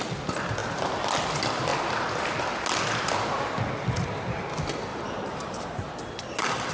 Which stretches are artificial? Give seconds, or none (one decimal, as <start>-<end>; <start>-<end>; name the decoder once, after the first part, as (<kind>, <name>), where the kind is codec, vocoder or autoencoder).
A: 4.9-6.0 (vocoder, BigVGAN v2)